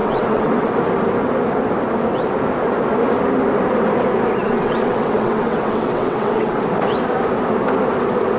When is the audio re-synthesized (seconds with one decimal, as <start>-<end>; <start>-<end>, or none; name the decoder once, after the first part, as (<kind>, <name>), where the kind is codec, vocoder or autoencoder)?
0.0-0.7 (vocoder, WaveNeXt); 4.4-6.6